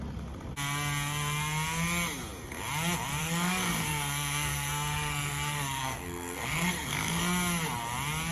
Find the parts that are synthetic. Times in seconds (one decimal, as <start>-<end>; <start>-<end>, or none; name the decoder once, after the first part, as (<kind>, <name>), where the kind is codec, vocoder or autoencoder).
3.2-7.2 (codec, SNAC)